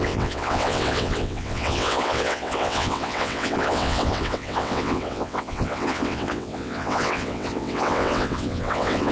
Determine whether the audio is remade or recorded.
remade